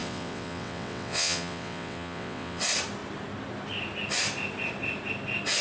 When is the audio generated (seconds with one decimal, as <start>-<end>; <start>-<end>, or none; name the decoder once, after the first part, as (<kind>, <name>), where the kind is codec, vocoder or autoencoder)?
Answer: 0.0-2.6 (vocoder, WaveNeXt)